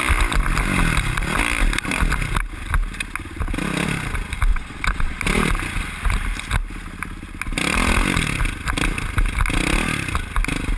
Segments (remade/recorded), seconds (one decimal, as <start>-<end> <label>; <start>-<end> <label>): 0.0-4.5 recorded; 4.5-5.2 remade; 5.2-10.8 recorded

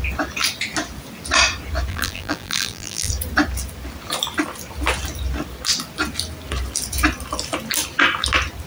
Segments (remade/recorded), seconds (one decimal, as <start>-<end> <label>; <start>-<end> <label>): 0.0-1.9 recorded; 1.9-3.1 remade; 3.1-8.7 recorded

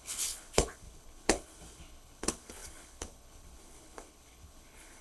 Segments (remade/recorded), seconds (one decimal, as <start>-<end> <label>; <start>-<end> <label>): 0.0-5.0 remade